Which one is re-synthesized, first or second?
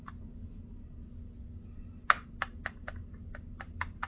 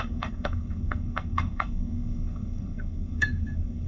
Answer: second